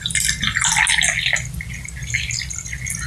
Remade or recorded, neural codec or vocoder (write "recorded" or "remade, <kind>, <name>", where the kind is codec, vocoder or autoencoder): recorded